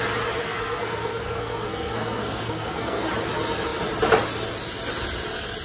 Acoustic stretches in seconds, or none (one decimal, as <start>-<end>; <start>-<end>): 0.0-0.4; 3.1-5.6